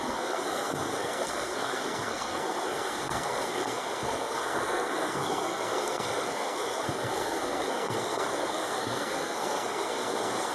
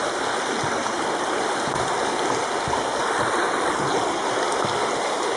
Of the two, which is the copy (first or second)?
first